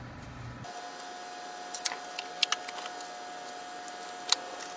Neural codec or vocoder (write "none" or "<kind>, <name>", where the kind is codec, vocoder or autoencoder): none